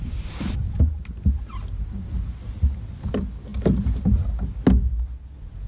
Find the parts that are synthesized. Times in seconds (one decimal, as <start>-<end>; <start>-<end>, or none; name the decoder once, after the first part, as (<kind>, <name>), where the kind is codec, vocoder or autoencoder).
none